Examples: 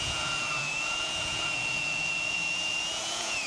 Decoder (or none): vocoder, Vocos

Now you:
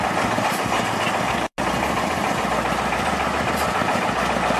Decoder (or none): none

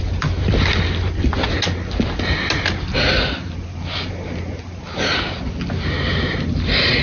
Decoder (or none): none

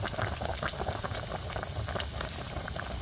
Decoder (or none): none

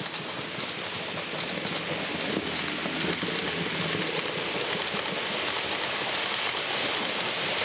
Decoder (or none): none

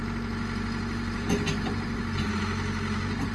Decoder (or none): none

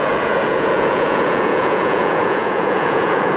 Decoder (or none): vocoder, Vocos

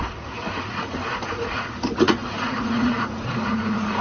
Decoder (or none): vocoder, Vocos